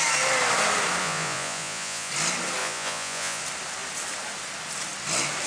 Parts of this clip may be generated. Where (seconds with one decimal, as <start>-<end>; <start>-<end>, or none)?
1.0-2.1; 2.6-3.4